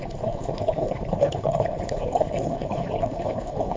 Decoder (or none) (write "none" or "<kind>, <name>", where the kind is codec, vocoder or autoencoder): codec, HILCodec